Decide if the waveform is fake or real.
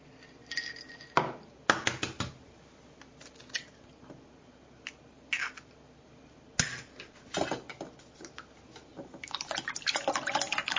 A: real